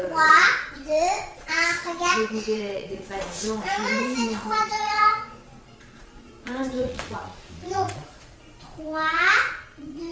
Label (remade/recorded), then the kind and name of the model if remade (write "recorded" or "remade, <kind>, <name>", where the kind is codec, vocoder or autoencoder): remade, vocoder, Vocos